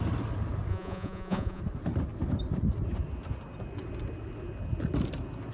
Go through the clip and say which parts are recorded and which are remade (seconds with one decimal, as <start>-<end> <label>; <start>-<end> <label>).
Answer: 0.0-0.7 recorded; 0.7-1.6 remade; 1.6-5.5 recorded